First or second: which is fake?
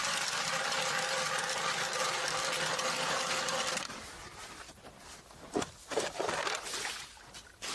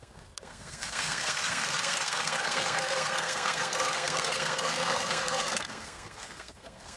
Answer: second